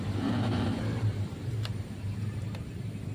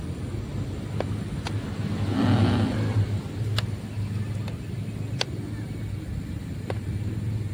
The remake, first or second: first